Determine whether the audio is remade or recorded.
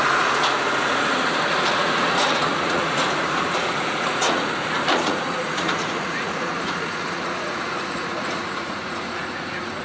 remade